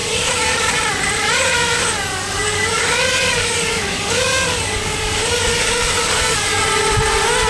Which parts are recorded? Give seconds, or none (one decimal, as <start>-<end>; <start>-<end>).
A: 0.7-2.1; 6.6-7.5